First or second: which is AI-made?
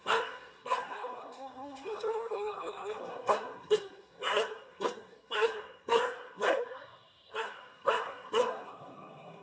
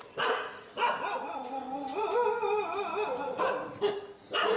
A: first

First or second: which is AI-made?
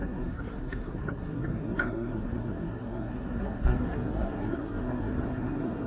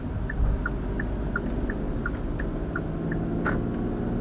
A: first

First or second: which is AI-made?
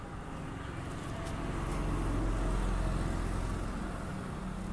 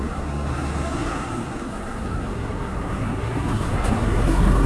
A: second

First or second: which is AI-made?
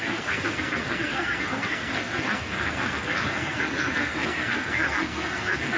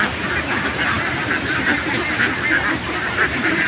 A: first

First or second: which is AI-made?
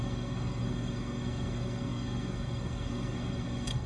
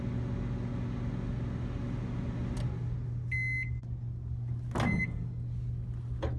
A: first